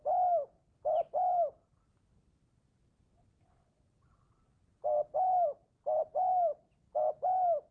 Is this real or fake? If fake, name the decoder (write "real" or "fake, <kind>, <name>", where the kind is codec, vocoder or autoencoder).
real